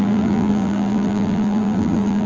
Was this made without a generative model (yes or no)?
no